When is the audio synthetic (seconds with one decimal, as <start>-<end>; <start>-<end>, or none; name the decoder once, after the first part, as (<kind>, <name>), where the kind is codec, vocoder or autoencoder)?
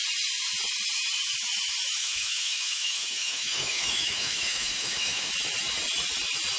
2.0-5.3 (autoencoder, DAC-VAE)